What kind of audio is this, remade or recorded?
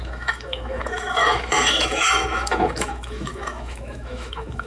remade